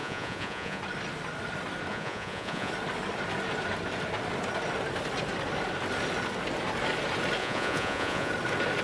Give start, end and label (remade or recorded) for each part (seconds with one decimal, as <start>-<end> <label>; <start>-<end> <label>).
0.0-0.8 remade; 0.8-1.9 recorded; 1.9-2.7 remade; 2.7-7.4 recorded; 7.4-8.3 remade; 8.3-8.8 recorded